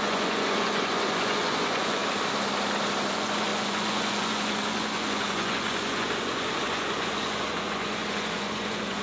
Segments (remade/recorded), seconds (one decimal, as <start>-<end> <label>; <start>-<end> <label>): 0.0-2.0 remade; 2.0-3.1 recorded; 3.1-9.0 remade